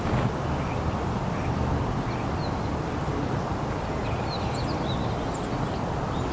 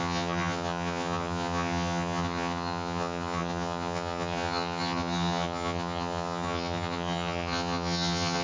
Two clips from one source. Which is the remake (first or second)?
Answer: second